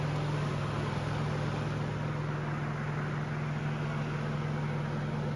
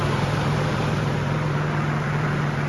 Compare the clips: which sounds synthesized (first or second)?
second